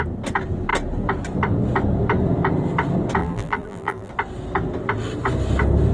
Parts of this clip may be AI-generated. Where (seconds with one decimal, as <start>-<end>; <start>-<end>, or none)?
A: 3.2-4.1